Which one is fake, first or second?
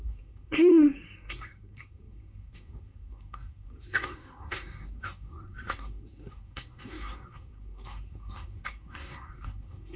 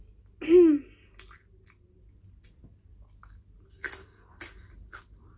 first